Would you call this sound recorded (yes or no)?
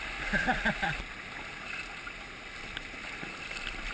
yes